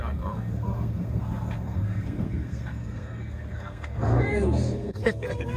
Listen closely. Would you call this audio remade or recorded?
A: remade